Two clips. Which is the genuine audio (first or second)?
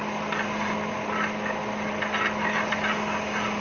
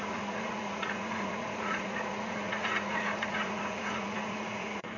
first